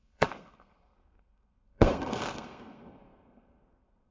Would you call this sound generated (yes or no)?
yes